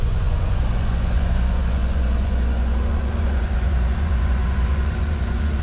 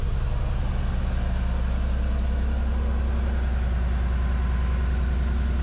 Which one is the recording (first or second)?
second